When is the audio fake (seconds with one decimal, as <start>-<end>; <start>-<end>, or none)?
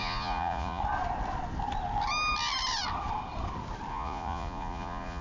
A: 0.0-0.8; 3.9-5.2